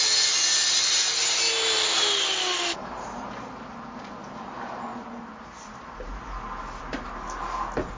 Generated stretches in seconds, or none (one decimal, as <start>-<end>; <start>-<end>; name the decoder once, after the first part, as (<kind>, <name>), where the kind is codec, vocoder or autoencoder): 2.8-3.3 (vocoder, BigVGAN v2)